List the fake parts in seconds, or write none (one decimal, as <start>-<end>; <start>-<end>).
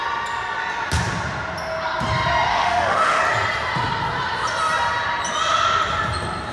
2.5-3.2